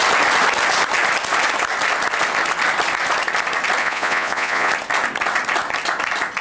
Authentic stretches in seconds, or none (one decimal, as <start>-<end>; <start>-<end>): 0.0-3.8; 4.7-6.4